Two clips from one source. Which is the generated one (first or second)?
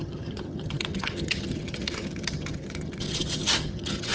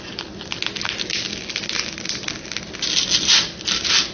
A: first